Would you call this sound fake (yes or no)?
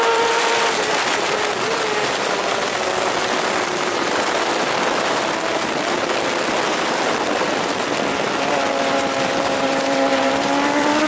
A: yes